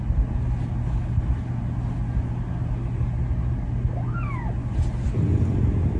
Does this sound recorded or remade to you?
recorded